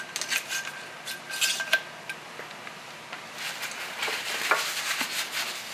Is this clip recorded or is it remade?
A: recorded